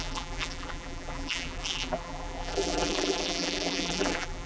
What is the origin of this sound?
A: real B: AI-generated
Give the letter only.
B